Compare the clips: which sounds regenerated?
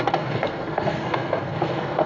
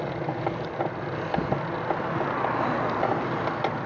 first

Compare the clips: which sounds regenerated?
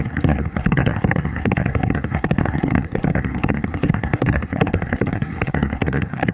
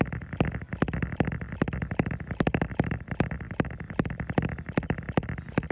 first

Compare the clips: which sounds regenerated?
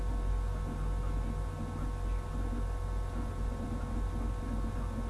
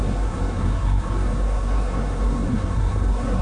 second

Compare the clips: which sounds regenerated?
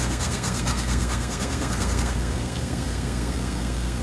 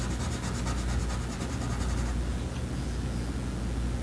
first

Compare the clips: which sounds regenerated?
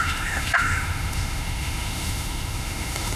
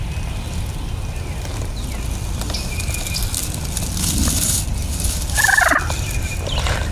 first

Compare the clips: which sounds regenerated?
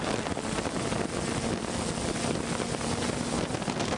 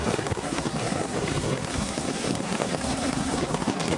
second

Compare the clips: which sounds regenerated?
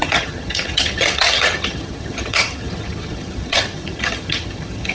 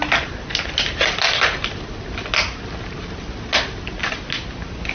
first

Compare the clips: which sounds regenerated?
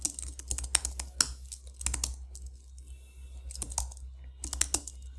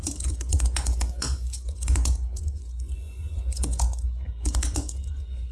second